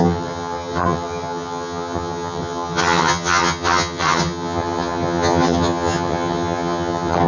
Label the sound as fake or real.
fake